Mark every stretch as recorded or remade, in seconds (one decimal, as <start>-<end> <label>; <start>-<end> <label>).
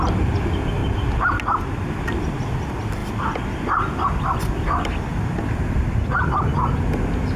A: 0.0-7.4 recorded